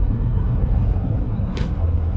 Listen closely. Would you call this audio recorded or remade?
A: remade